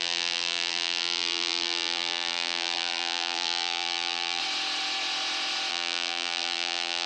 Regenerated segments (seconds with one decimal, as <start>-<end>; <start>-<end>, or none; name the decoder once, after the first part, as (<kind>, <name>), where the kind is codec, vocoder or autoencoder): 0.0-4.4 (vocoder, BigVGAN v2); 5.7-7.1